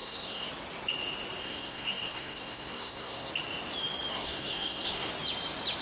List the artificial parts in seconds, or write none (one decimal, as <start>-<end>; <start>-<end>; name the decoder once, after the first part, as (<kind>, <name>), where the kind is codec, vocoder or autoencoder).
0.0-0.5 (codec, SNAC); 1.4-3.3; 4.1-5.1